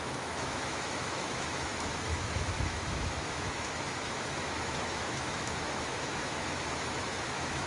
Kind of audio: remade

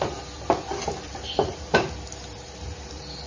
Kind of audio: remade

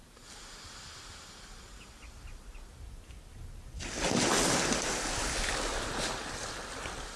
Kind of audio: recorded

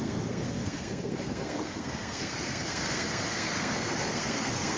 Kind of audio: remade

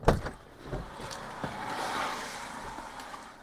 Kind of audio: remade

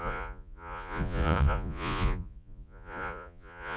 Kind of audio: remade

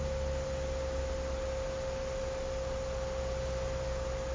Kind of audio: recorded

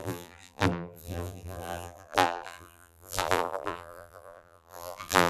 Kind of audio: remade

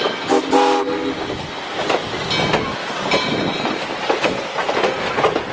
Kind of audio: recorded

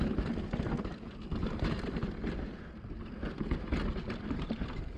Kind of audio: recorded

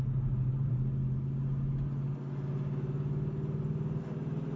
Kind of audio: recorded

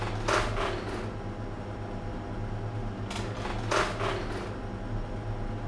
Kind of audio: recorded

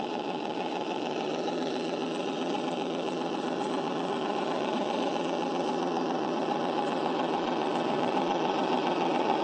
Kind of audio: remade